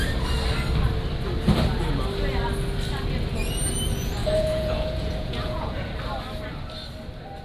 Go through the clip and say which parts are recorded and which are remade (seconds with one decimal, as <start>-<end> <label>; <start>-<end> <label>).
0.0-4.2 recorded; 4.2-5.9 remade; 5.9-7.4 recorded